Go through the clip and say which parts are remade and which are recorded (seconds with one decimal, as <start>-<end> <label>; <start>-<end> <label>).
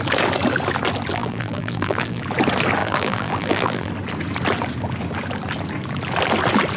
0.0-1.1 recorded; 1.1-2.2 remade; 2.2-2.8 recorded; 2.8-3.9 remade; 3.9-6.8 recorded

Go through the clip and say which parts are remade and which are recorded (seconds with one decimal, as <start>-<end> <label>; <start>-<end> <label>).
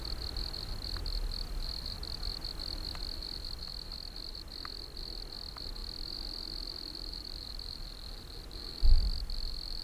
0.0-9.8 recorded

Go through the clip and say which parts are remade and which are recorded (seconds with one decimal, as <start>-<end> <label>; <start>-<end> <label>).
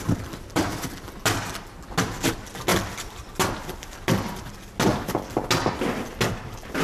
0.0-6.8 recorded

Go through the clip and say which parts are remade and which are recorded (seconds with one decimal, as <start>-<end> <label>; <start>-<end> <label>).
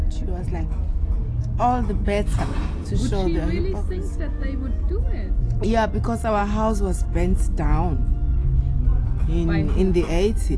0.0-10.6 recorded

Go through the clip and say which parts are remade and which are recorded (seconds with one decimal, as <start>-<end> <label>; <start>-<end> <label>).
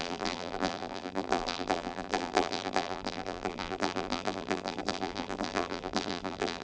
0.0-6.6 remade